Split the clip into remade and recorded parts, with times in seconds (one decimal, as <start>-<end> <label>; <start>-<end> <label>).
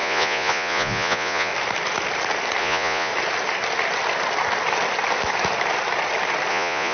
0.0-1.5 remade; 1.5-2.6 recorded; 2.6-3.1 remade; 3.1-6.5 recorded; 6.5-6.9 remade